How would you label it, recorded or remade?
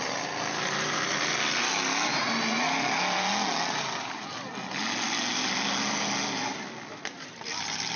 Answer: recorded